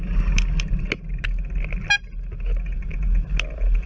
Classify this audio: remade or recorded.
recorded